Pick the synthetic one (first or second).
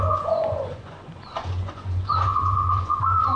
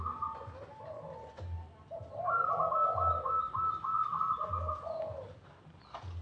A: first